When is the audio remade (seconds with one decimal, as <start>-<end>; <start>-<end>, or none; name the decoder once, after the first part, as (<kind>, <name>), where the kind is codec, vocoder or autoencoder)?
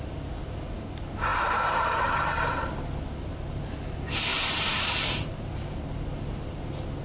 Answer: 1.3-2.5 (vocoder, BigVGAN v2); 4.3-5.8